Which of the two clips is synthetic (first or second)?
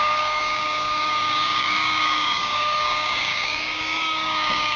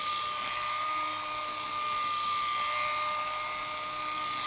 first